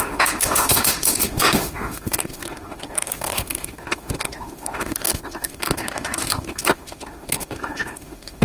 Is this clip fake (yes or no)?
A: yes